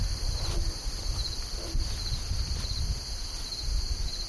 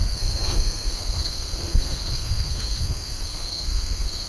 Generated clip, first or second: second